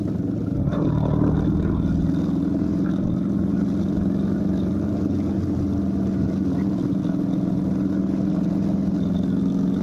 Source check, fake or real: real